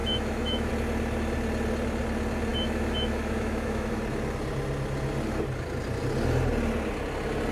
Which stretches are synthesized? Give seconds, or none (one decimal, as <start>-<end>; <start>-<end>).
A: 0.0-0.7; 2.5-4.0